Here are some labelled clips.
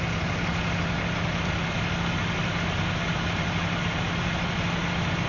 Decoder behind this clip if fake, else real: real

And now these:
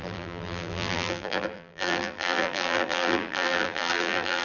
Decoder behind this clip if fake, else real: fake, vocoder, BigVGAN v2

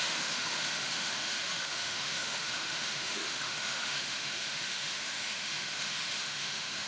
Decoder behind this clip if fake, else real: fake, autoencoder, DAC-VAE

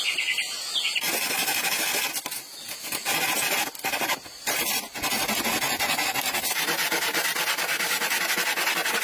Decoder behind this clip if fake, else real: real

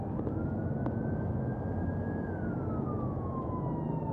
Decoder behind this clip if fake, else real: real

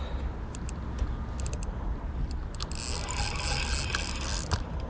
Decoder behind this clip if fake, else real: real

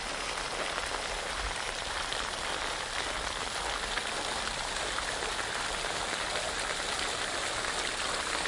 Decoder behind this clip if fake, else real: real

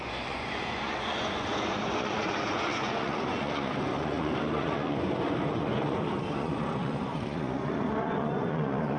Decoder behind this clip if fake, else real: fake, vocoder, Vocos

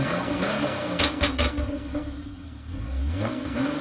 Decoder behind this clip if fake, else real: fake, codec, SNAC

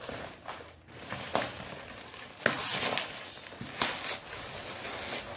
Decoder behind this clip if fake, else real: real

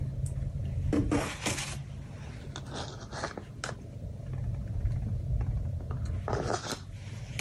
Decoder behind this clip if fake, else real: real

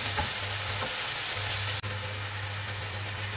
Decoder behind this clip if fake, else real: real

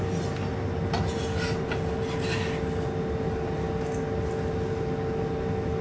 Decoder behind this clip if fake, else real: real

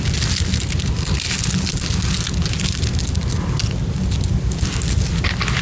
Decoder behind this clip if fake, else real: real